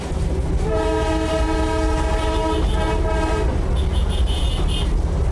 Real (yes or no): yes